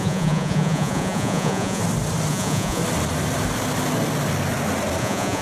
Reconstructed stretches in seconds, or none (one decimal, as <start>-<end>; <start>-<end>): 0.0-1.8; 2.3-2.8; 5.0-5.4